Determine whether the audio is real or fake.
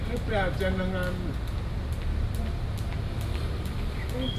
real